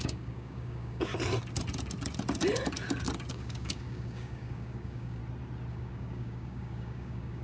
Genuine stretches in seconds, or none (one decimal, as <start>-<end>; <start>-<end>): 1.1-3.3; 5.2-5.7